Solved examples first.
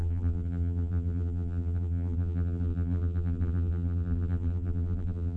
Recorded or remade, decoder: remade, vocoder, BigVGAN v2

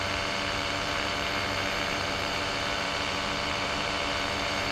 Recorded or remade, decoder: remade, vocoder, BigVGAN v2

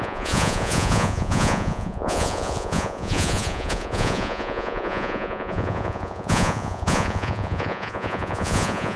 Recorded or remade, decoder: remade, vocoder, Vocos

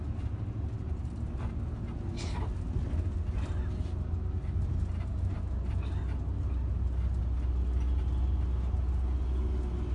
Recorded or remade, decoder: recorded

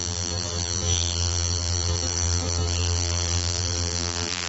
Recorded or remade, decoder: remade, vocoder, BigVGAN v2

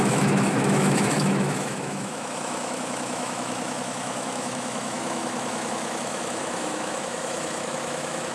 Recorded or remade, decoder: remade, autoencoder, DAC-VAE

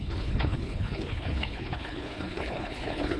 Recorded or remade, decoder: remade, codec, HILCodec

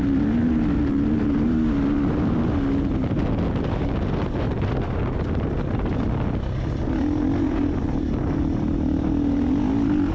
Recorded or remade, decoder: recorded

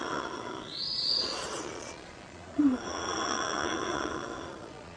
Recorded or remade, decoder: remade, vocoder, Vocos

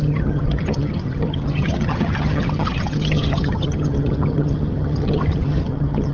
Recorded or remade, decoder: remade, vocoder, HiFi-GAN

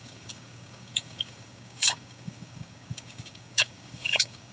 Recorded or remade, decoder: remade, codec, DAC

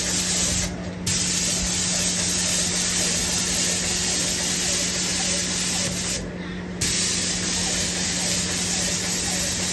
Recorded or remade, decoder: recorded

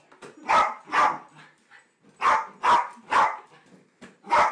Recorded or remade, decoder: recorded